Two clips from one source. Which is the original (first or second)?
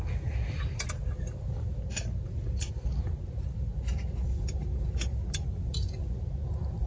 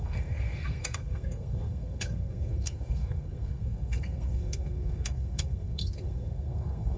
first